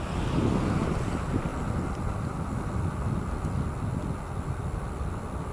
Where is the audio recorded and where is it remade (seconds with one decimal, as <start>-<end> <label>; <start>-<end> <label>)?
0.0-5.5 recorded